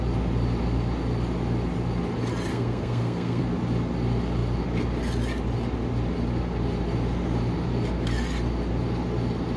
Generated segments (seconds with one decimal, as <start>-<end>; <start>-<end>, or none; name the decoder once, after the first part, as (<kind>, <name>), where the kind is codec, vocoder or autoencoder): 2.5-3.4 (codec, SNAC)